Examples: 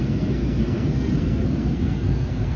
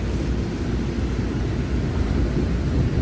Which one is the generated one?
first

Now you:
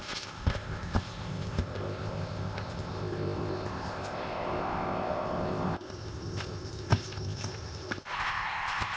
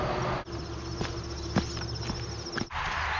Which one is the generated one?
first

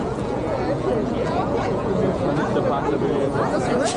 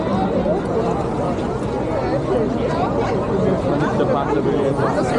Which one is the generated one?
first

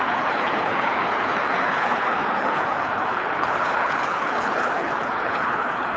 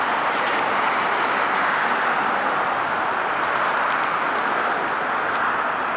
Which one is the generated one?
first